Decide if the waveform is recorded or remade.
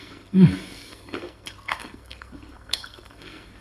remade